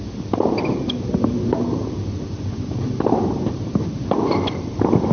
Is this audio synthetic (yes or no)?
no